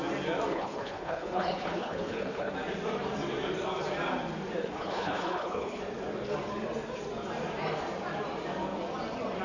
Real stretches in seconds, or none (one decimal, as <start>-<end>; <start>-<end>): 0.0-0.5; 2.5-4.6; 5.8-9.4